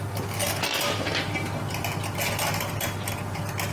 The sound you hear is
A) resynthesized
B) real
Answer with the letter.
B